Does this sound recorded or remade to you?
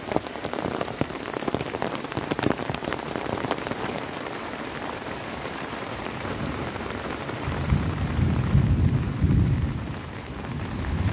remade